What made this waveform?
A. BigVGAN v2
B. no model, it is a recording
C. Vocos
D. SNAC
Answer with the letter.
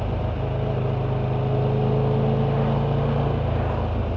B